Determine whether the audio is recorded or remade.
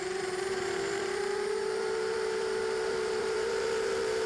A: remade